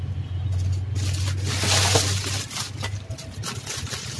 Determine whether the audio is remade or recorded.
recorded